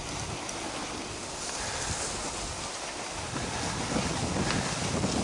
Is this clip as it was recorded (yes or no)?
yes